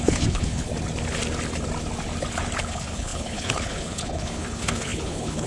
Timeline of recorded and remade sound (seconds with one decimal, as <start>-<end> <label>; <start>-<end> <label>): 0.0-0.7 remade; 0.7-2.6 recorded; 2.6-5.5 remade